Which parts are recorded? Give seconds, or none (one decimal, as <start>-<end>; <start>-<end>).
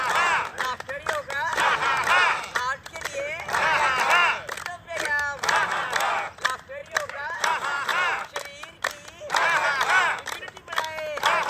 0.0-0.5; 2.6-6.8; 7.5-11.5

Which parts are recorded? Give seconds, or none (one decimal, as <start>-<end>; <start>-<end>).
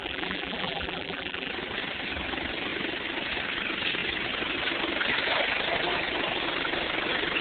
1.5-7.4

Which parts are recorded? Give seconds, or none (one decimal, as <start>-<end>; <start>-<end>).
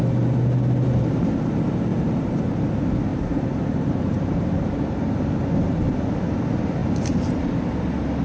0.0-1.9; 2.4-3.1; 4.5-8.2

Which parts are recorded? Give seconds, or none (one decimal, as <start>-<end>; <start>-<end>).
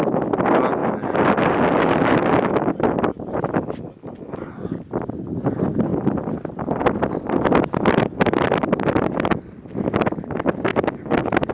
0.0-5.9; 10.2-11.5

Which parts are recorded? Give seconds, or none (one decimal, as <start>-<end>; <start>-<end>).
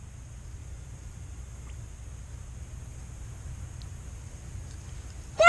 0.0-0.6; 1.9-5.5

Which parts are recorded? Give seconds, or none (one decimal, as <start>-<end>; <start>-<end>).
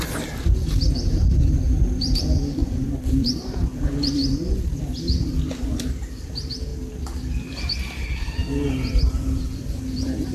4.2-4.8; 6.7-7.5; 8.4-8.9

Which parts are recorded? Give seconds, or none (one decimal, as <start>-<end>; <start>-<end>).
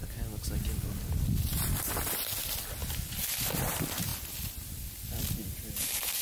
0.0-4.1; 5.7-6.2